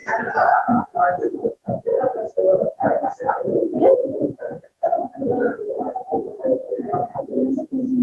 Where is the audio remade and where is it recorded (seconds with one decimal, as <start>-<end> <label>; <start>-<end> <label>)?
0.0-0.5 recorded; 0.5-8.0 remade